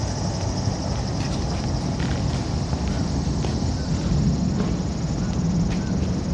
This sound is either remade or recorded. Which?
recorded